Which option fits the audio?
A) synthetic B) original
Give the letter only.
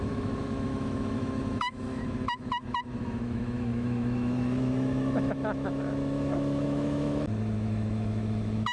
A